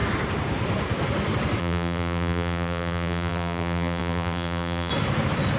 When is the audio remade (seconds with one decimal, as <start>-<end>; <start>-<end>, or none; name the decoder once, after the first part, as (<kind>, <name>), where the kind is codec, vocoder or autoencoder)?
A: 1.6-4.9 (vocoder, BigVGAN v2)